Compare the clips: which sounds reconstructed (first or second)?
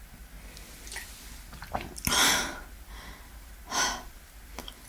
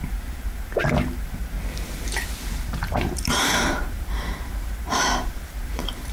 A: second